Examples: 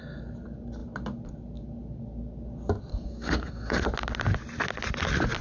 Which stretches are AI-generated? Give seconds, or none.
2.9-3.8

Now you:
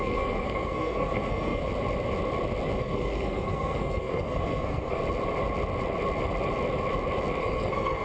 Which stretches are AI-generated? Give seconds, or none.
0.0-1.6; 2.8-5.0; 7.4-8.0

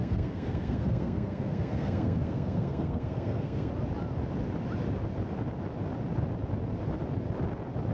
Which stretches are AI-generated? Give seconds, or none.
0.0-3.7

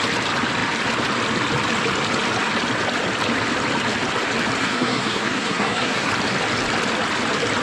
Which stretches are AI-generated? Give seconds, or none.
4.6-6.1

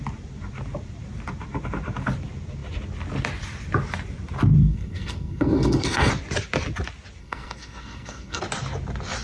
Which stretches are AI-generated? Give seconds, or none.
4.6-6.1; 7.2-8.4

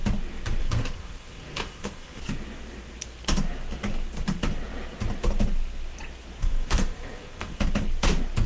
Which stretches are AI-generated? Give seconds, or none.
0.6-2.2; 6.4-7.6